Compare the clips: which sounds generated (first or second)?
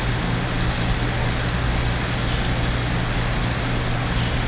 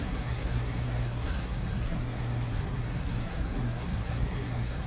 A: second